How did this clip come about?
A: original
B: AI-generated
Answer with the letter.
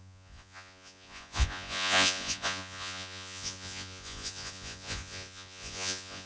B